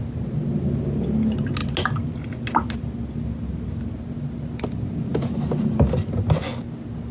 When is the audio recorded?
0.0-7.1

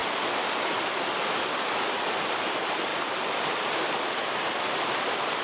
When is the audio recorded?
0.0-2.9; 4.1-5.4

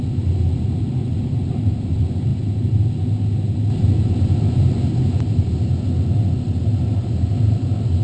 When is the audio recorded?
0.0-8.0

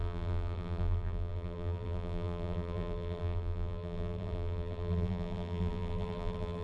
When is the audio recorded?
none

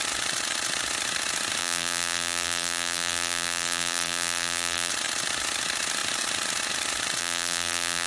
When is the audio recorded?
0.0-1.6; 4.9-7.2

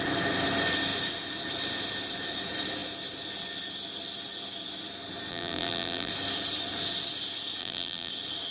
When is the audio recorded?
0.0-5.3; 6.1-7.6; 8.1-8.5